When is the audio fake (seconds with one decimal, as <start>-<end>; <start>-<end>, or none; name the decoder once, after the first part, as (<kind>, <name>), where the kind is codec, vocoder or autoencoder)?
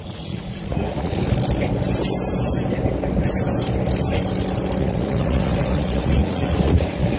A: 0.0-1.2 (vocoder, Vocos); 4.8-7.2